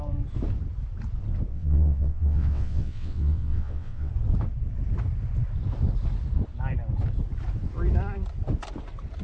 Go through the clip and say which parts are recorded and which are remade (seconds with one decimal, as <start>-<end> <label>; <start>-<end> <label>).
0.0-1.5 recorded; 1.5-4.1 remade; 4.1-9.2 recorded